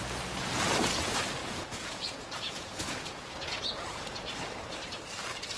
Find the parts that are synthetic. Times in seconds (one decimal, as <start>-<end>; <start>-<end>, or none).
1.4-4.3